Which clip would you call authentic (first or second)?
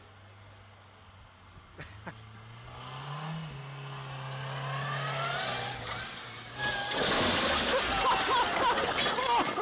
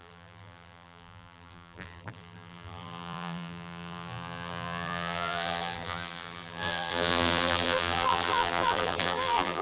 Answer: first